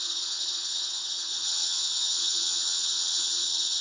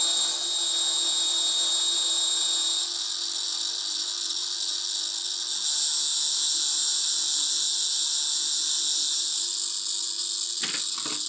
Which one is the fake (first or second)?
first